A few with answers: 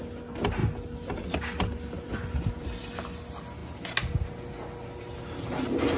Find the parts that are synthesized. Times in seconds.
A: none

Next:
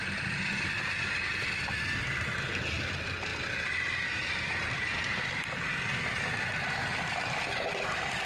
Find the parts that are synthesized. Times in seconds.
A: 0.0-8.2 (vocoder, BigVGAN v2)

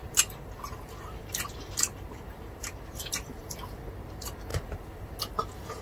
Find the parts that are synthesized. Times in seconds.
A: 0.0-3.5 (vocoder, BigVGAN v2); 4.5-5.2

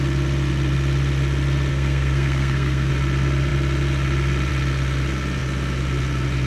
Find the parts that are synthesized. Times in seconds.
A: 1.7-2.9 (codec, SNAC)

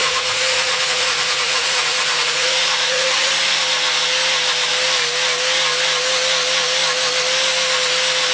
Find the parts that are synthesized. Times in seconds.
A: 0.0-3.3 (vocoder, Vocos)

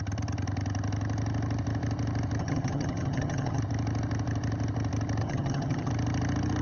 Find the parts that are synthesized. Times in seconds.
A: 2.4-3.6 (vocoder, HiFi-GAN); 5.2-5.9